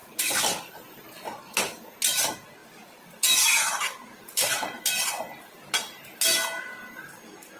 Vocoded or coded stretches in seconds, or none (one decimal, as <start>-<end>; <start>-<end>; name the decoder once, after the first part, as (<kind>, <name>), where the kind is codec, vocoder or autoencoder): 0.0-0.7 (vocoder, BigVGAN v2); 2.6-4.8